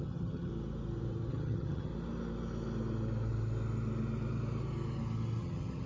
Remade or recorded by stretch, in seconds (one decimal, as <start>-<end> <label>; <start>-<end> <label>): 0.0-0.5 remade; 0.5-1.3 recorded; 1.3-1.9 remade; 1.9-5.4 recorded; 5.4-5.9 remade

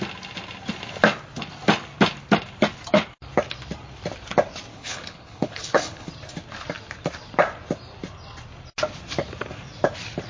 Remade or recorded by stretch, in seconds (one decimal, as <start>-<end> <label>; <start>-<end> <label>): 0.0-4.7 recorded; 4.7-6.1 remade; 6.1-10.3 recorded

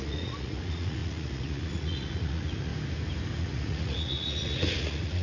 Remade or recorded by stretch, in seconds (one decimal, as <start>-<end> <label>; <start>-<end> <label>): 0.0-2.7 remade; 2.7-3.4 recorded; 3.4-5.2 remade

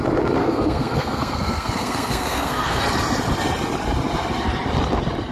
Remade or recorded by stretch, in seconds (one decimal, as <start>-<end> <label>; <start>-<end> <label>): 0.0-0.4 recorded; 0.4-2.8 remade; 2.8-5.3 recorded

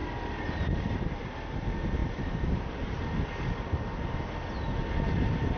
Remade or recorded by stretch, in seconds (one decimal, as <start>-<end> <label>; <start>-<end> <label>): 0.0-2.0 recorded; 2.0-3.3 remade; 3.3-5.6 recorded

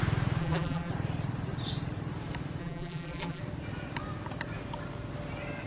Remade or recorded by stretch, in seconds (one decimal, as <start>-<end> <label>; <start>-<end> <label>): 0.0-0.4 recorded; 0.4-0.9 remade; 0.9-2.6 recorded; 2.6-3.4 remade; 3.4-5.7 recorded

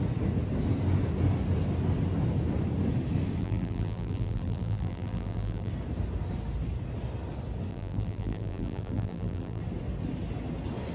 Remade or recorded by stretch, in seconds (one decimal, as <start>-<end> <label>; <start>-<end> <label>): 0.0-3.4 recorded; 3.4-5.7 remade; 5.7-7.7 recorded; 7.7-9.6 remade; 9.6-10.9 recorded

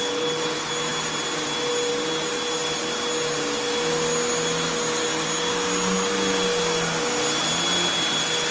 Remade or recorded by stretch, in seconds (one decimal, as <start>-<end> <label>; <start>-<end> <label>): 0.0-8.5 recorded